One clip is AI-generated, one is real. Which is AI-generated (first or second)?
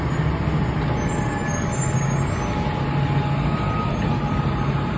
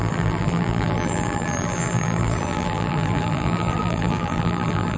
second